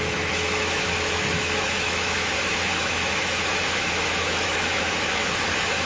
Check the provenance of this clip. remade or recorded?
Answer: remade